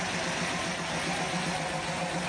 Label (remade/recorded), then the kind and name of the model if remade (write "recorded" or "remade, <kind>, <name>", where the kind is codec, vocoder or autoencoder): recorded